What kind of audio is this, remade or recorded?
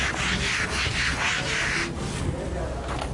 recorded